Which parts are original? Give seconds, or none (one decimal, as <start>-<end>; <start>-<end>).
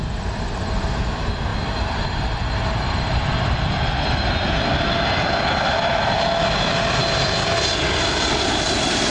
0.0-9.1